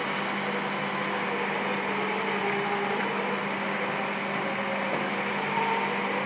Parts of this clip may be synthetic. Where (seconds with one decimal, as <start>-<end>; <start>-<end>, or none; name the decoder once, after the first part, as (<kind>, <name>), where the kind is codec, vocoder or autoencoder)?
none